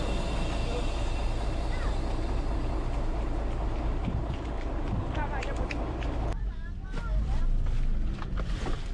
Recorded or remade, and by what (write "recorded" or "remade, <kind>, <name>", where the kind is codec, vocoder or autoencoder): recorded